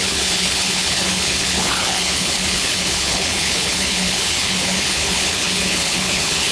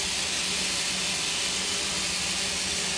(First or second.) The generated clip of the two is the first